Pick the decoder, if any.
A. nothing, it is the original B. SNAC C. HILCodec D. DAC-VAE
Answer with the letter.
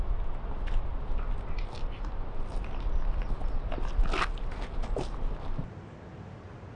A